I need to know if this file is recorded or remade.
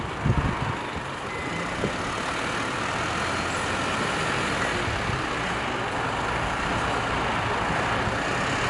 recorded